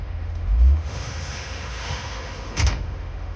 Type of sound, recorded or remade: remade